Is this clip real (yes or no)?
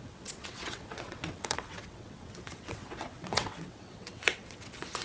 no